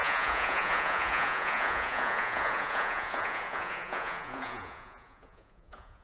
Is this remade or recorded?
remade